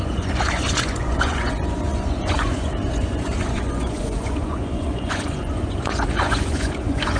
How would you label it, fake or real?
fake